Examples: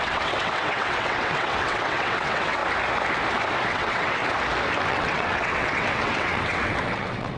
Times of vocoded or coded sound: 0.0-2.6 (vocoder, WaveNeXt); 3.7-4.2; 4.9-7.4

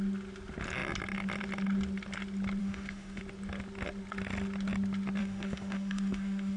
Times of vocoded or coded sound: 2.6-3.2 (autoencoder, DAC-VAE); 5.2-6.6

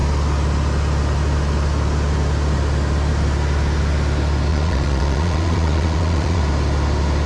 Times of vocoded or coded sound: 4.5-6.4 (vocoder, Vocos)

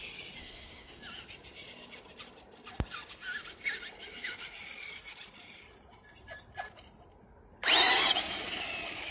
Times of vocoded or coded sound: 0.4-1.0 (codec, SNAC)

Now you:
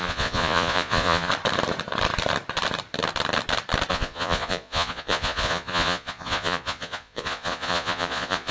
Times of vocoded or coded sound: 0.0-1.3 (vocoder, Vocos); 3.9-8.5